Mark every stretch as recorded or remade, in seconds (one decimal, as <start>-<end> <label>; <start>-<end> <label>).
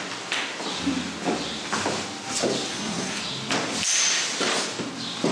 0.0-2.7 recorded; 2.7-3.2 remade; 3.2-5.3 recorded